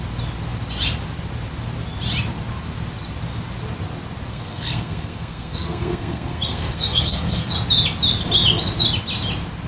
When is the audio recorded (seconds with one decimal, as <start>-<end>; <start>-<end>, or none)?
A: 0.0-4.3; 7.5-9.7